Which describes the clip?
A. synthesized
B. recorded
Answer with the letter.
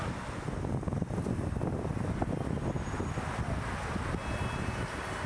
B